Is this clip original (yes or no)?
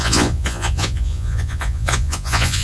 no